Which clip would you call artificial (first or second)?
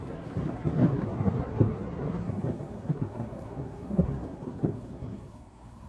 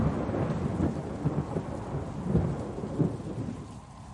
first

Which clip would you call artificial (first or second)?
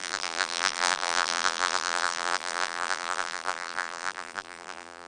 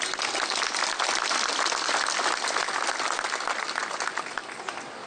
first